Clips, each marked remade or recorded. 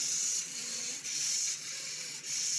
remade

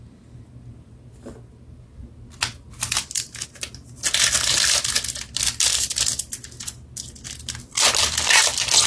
recorded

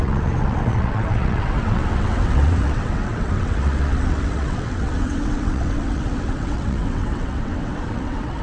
remade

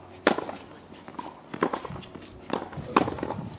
recorded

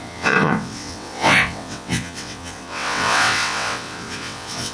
remade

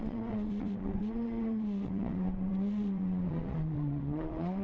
remade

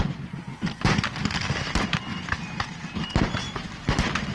recorded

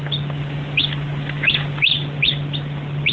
recorded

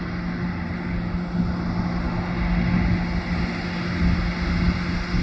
recorded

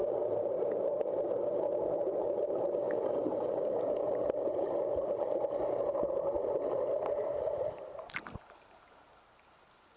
recorded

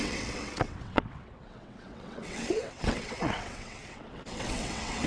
remade